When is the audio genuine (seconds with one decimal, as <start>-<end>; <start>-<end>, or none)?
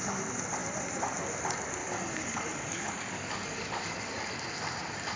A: 0.0-1.8; 4.3-5.2